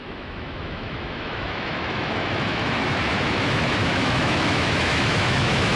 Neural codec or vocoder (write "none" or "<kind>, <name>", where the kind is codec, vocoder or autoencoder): autoencoder, DAC-VAE